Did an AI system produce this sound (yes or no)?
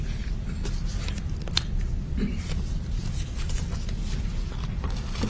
no